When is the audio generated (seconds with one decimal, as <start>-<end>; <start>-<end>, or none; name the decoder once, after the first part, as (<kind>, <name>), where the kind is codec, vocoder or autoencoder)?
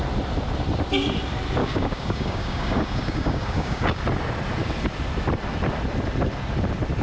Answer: 1.6-4.0 (codec, DAC)